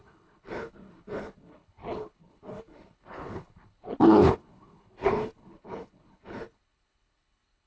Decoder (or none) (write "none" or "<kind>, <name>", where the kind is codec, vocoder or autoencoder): codec, HILCodec